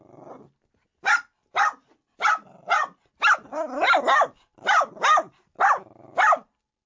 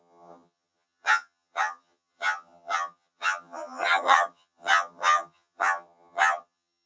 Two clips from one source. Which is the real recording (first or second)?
first